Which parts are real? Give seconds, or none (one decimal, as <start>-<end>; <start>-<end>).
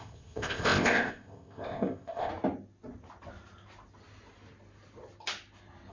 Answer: 2.3-5.9